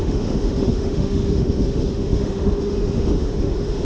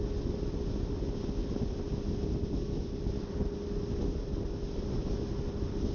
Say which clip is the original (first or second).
second